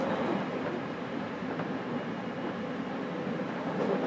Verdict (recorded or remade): recorded